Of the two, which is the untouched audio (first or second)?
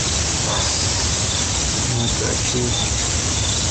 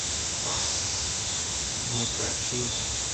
first